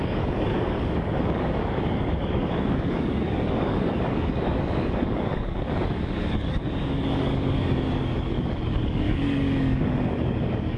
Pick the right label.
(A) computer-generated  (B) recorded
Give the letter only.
A